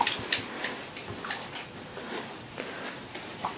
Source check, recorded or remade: recorded